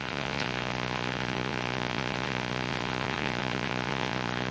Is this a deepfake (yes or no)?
yes